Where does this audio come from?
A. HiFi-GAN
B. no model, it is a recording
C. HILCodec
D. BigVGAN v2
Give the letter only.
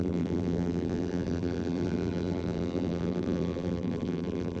D